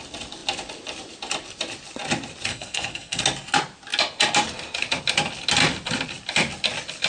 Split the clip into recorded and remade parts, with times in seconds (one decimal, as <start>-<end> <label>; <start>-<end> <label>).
0.0-2.5 recorded; 2.5-3.2 remade; 3.2-7.1 recorded